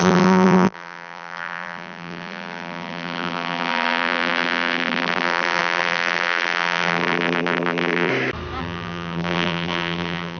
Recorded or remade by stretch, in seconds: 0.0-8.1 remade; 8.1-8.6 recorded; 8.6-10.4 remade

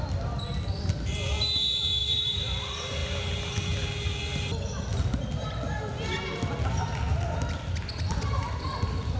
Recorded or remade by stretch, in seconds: 0.0-2.0 recorded; 2.0-2.6 remade; 2.6-9.2 recorded

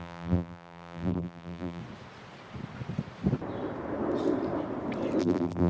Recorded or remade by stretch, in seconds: 0.0-1.8 remade; 1.8-5.2 recorded; 5.2-5.7 remade

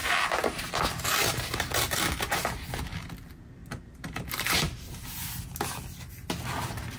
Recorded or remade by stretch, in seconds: 0.0-0.6 remade; 0.6-1.2 recorded; 1.2-1.7 remade; 1.7-3.6 recorded; 3.6-5.3 remade; 5.3-7.0 recorded